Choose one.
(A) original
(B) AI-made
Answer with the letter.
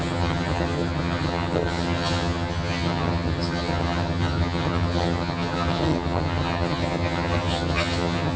B